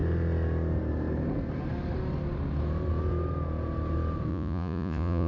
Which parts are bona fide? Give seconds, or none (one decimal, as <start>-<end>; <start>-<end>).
0.0-4.3